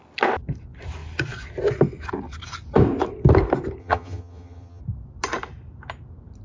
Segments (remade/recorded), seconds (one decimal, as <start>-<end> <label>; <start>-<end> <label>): 0.0-3.8 recorded; 3.8-4.8 remade; 4.8-6.4 recorded